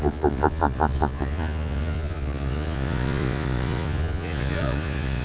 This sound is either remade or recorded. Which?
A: remade